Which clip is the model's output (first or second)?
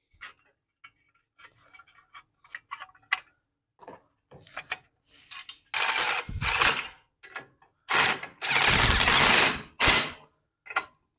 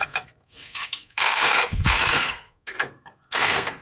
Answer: second